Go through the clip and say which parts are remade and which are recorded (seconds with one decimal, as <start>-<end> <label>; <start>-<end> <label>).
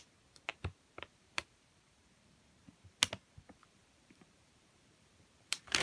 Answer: 0.0-0.5 recorded; 0.5-3.0 remade; 3.0-3.6 recorded; 3.6-5.8 remade